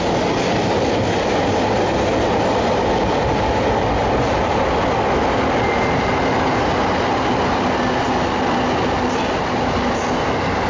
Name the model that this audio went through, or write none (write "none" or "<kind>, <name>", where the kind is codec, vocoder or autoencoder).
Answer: none